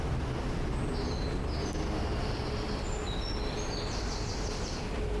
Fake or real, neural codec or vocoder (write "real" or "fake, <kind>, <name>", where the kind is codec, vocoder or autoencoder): real